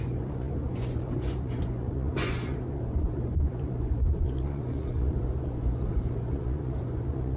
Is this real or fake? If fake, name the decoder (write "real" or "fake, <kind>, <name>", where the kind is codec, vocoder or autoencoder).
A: fake, vocoder, Vocos